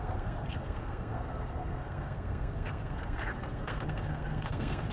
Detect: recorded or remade remade